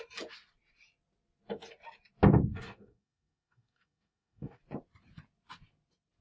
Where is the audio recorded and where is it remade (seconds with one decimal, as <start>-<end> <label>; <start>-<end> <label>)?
0.0-2.5 recorded; 2.5-4.6 remade; 4.6-6.2 recorded